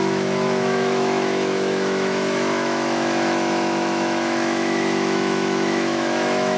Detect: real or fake fake